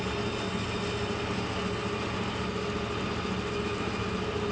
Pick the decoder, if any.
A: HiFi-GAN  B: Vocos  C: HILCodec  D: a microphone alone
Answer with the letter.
D